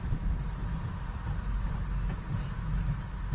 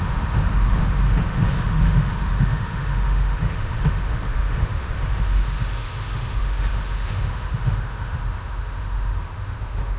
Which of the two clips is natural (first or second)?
first